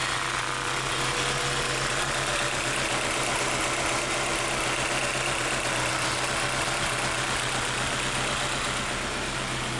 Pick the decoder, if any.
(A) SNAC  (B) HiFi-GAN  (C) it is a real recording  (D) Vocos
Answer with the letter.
C